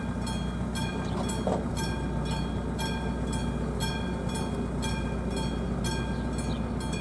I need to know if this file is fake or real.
real